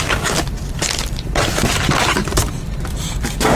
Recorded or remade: recorded